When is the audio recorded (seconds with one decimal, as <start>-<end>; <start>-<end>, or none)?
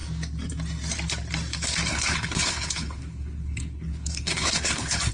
0.0-1.9